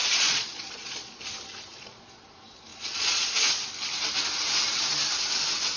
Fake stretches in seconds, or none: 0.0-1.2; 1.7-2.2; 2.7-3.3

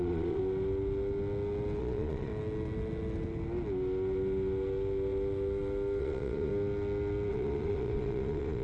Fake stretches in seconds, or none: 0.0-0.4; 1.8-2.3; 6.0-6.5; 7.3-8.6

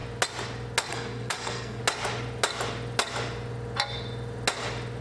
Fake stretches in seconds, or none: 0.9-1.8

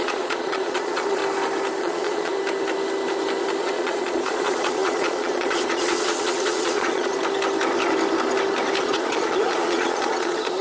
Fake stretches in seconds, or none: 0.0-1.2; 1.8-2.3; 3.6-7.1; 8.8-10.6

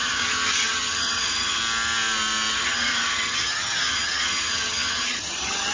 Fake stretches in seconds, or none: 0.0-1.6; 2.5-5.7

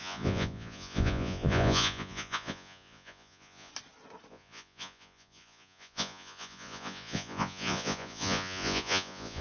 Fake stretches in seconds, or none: 0.0-3.7; 4.3-9.4

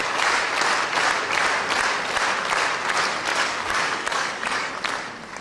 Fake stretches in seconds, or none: 0.0-0.5; 3.3-4.7